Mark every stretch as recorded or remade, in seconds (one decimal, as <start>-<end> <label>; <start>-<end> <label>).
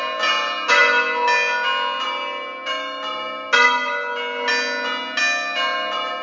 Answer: 0.0-6.2 recorded